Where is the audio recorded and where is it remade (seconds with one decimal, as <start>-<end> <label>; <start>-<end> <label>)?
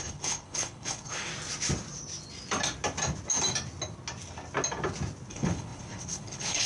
0.0-1.3 remade; 1.3-5.3 recorded; 5.3-6.7 remade